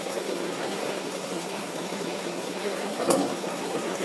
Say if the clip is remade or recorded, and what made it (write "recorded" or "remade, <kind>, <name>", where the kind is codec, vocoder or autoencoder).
remade, codec, SNAC